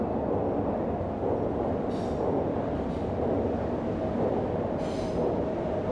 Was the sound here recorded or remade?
recorded